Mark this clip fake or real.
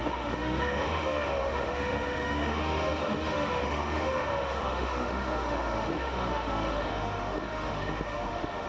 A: fake